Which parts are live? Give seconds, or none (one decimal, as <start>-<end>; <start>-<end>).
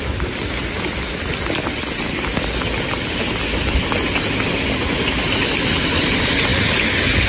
0.0-7.3